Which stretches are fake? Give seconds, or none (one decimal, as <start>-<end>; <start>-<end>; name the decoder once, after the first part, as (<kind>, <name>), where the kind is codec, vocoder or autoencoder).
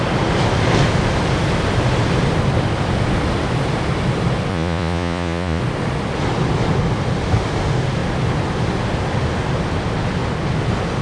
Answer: 4.5-5.6 (vocoder, Vocos)